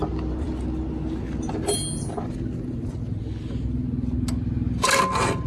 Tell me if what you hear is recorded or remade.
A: recorded